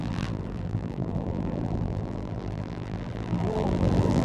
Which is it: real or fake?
fake